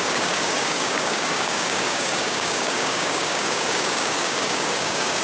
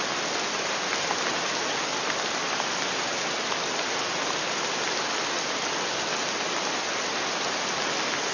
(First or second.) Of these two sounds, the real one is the second